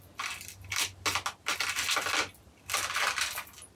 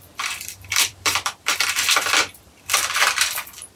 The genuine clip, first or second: first